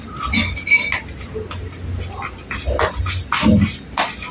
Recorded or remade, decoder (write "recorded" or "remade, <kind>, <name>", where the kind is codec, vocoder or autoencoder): recorded